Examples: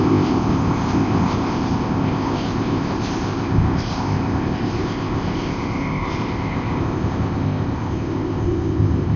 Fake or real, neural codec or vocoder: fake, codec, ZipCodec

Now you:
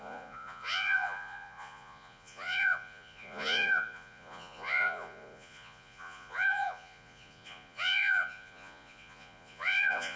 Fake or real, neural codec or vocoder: fake, vocoder, Vocos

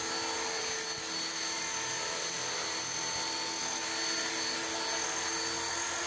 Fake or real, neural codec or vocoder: real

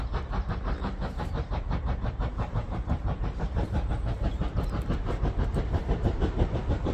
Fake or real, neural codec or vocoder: fake, vocoder, BigVGAN v2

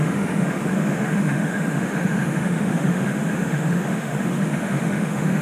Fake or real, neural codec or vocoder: fake, autoencoder, DAC-VAE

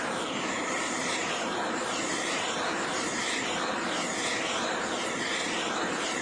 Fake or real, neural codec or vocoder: fake, vocoder, BigVGAN v2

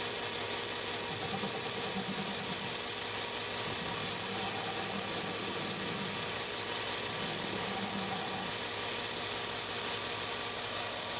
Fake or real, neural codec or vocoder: real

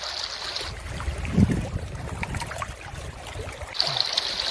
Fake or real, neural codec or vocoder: real